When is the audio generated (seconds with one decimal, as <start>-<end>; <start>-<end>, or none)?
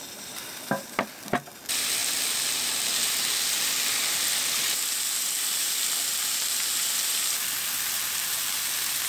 none